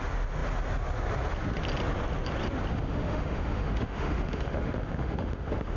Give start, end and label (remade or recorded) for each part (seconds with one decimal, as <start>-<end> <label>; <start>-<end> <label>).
0.0-2.7 recorded; 2.7-5.8 remade